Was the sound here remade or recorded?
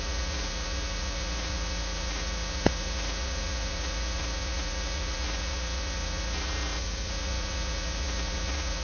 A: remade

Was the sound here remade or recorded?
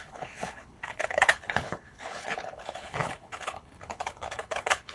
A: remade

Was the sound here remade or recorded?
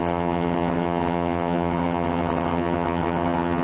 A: remade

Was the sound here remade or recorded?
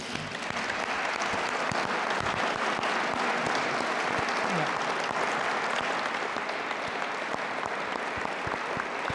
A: recorded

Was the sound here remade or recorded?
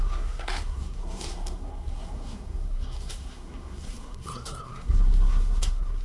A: remade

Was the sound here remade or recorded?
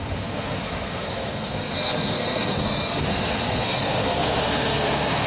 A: remade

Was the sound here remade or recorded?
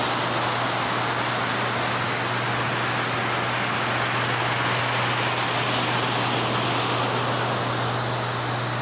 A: recorded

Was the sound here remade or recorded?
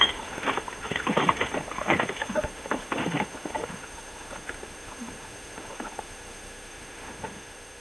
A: remade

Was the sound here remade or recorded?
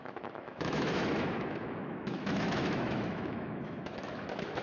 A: remade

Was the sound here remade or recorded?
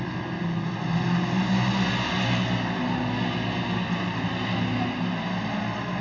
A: recorded